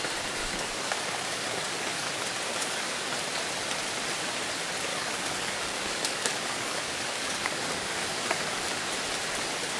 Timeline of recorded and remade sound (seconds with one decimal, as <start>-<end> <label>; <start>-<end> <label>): 0.0-0.4 recorded; 0.4-2.1 remade; 2.1-2.5 recorded; 2.5-3.1 remade; 3.1-4.9 recorded; 4.9-8.8 remade; 8.8-9.8 recorded